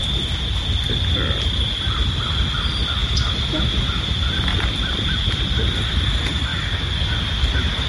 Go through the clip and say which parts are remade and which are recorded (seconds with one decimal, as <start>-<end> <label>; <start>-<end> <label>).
0.0-3.0 recorded; 3.0-3.6 remade; 3.6-4.5 recorded; 4.5-5.3 remade; 5.3-7.9 recorded